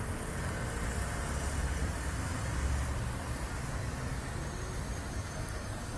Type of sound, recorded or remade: recorded